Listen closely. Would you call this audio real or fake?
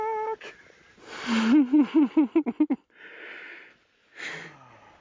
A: real